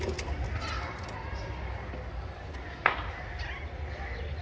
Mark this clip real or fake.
real